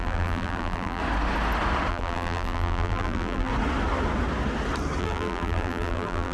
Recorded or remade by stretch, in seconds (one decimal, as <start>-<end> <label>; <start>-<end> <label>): 0.0-1.0 remade; 1.0-1.9 recorded; 1.9-3.5 remade; 3.5-5.0 recorded; 5.0-6.3 remade